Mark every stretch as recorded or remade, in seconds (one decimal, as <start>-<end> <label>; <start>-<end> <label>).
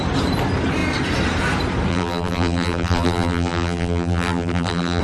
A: 0.0-1.9 recorded; 1.9-5.0 remade